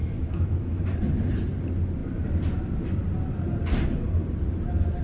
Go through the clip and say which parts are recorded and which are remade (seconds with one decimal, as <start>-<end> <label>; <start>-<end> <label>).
0.0-0.8 remade; 0.8-5.0 recorded